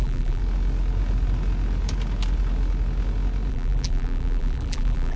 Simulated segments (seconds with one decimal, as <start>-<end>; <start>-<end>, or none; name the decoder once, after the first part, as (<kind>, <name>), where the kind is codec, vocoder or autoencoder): 0.0-0.4 (vocoder, BigVGAN v2); 3.5-5.2